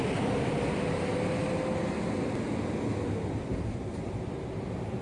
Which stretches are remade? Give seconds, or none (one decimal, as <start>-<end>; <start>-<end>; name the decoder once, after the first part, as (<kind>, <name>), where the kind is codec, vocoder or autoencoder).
none